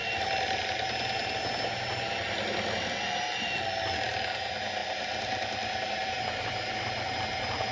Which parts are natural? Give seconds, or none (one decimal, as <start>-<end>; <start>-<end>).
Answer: 0.6-4.8; 7.2-7.7